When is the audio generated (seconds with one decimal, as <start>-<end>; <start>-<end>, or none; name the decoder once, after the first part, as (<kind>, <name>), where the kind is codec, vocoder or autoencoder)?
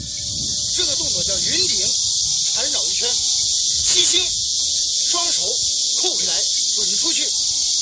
0.5-1.0 (vocoder, Vocos); 3.1-6.5